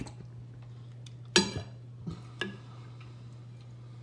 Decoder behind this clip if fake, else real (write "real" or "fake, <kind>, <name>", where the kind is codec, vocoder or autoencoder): real